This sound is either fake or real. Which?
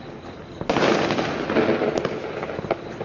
real